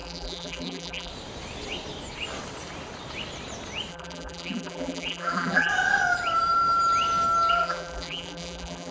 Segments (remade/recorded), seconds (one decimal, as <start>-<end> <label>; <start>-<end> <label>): 0.0-1.1 remade; 1.1-3.9 recorded; 3.9-5.7 remade; 5.7-7.5 recorded; 7.5-8.9 remade